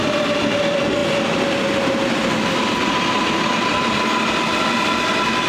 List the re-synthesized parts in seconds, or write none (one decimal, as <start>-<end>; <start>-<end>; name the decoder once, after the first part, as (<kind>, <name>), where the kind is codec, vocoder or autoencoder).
none